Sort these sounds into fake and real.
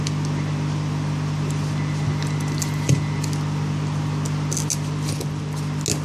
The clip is real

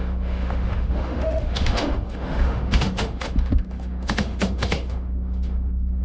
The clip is fake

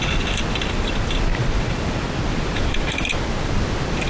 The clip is real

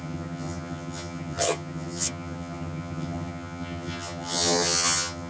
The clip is fake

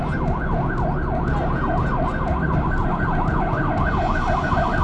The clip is real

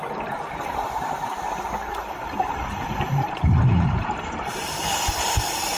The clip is fake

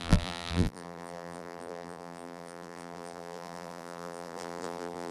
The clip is fake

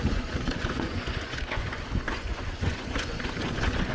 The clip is fake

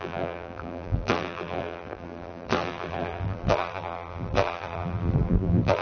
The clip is fake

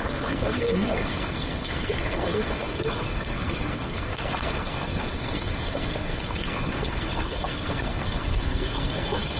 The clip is fake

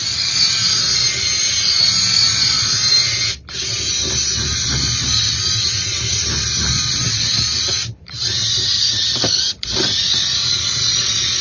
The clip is real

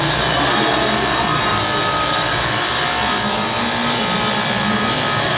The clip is real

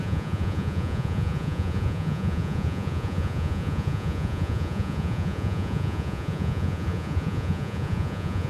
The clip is fake